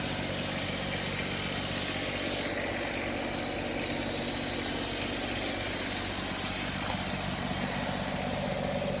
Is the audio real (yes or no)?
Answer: yes